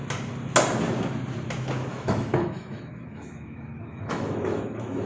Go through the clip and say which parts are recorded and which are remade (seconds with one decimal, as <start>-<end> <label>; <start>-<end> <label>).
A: 0.0-1.9 recorded; 1.9-5.1 remade